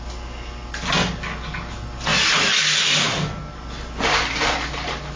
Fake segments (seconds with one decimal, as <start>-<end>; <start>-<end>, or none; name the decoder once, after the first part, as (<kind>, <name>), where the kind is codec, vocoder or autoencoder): none